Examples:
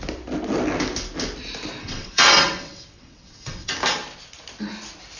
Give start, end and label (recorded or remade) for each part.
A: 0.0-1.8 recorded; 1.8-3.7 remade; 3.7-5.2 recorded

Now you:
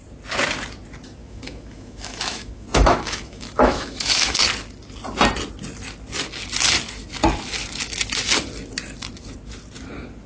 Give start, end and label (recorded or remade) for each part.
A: 0.0-1.2 recorded; 1.2-4.4 remade; 4.4-10.3 recorded